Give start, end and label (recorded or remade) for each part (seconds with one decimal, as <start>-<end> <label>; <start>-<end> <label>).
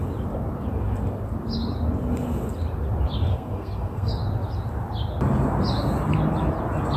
0.0-3.3 recorded; 3.3-4.1 remade; 4.1-7.0 recorded